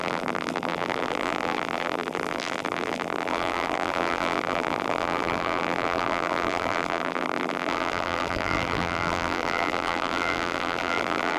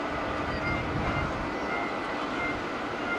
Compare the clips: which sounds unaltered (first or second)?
second